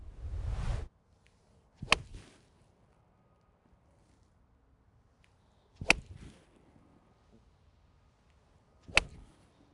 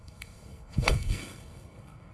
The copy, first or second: second